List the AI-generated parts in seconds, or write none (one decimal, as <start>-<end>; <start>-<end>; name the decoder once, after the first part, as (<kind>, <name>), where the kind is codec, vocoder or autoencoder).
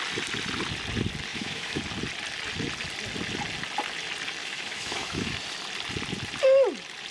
1.3-1.8 (autoencoder, DAC-VAE); 4.4-5.3